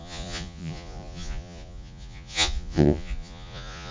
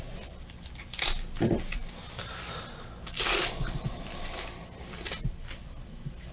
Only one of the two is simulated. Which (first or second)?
first